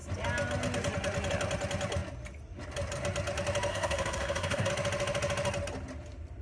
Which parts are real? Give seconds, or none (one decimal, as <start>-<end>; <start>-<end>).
0.0-3.7; 4.7-6.4